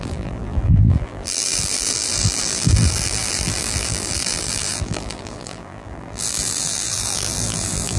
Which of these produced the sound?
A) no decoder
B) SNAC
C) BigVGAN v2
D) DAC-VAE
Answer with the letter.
C